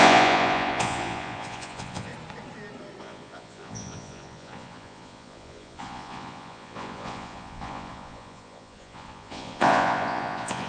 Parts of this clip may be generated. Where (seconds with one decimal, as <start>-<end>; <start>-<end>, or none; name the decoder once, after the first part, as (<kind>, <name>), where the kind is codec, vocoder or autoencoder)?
0.0-2.1 (vocoder, Vocos); 3.0-10.7